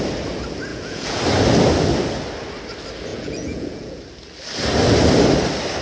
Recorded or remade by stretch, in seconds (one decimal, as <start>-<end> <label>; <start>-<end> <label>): 0.0-0.7 recorded; 0.7-1.2 remade; 1.2-3.1 recorded; 3.1-4.0 remade; 4.0-5.8 recorded